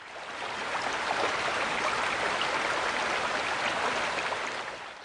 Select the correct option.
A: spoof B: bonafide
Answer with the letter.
B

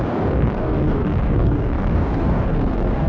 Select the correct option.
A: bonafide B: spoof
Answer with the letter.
B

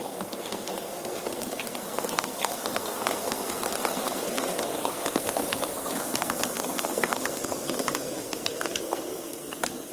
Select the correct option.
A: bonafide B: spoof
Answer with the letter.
B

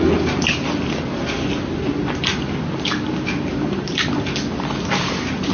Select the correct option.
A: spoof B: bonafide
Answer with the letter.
B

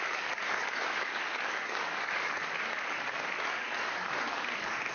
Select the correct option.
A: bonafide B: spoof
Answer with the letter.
B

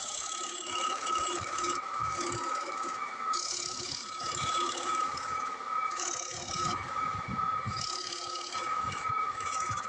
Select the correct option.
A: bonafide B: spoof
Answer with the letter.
B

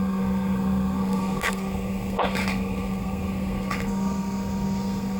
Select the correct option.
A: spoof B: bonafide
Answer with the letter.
A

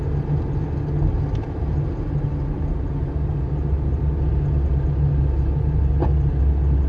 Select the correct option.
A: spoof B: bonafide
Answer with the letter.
B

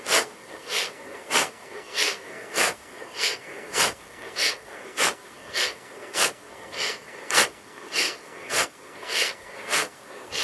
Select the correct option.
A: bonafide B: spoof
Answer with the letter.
B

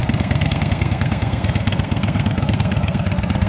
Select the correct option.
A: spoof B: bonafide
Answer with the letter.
A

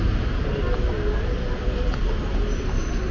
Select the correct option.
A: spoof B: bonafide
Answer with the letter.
B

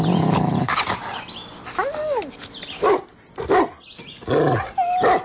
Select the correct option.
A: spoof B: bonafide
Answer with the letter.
B